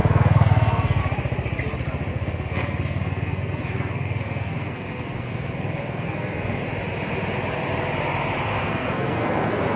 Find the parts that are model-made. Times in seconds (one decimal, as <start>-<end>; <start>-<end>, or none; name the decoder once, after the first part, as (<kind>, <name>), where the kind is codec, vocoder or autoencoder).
0.0-1.0 (codec, SNAC); 2.1-6.6; 8.5-9.8